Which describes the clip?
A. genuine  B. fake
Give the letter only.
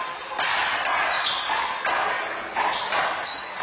A